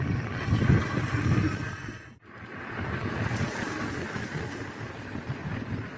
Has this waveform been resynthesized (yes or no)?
no